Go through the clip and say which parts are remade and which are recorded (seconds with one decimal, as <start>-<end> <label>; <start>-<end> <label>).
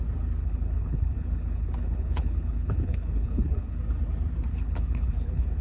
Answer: 0.0-0.4 recorded; 0.4-3.8 remade; 3.8-4.5 recorded; 4.5-5.6 remade